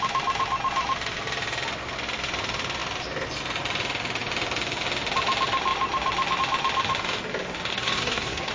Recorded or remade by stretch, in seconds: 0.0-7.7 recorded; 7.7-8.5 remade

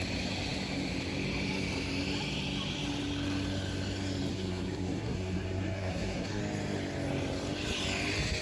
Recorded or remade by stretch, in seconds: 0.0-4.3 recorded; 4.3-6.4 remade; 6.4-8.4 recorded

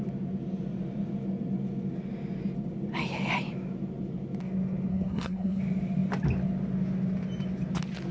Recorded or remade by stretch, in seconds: 0.0-4.9 recorded; 4.9-5.6 remade; 5.6-8.1 recorded

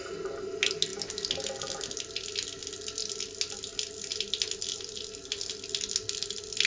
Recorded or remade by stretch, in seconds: 0.0-6.7 recorded

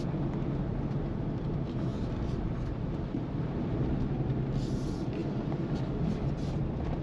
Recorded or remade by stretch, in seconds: 0.0-7.0 recorded

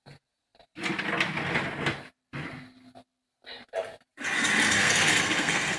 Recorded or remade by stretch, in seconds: 0.0-4.8 recorded; 4.8-5.8 remade